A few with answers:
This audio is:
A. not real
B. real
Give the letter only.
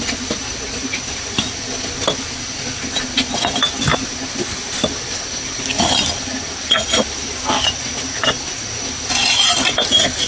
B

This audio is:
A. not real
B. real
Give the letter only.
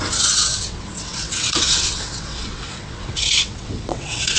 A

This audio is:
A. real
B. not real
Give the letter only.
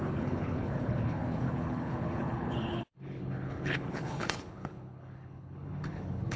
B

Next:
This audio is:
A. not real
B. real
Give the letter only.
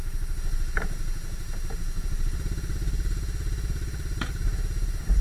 B